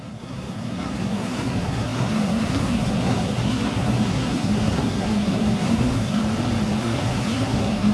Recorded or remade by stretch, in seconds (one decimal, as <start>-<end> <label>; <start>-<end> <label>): 0.0-6.2 remade; 6.2-6.8 recorded; 6.8-7.9 remade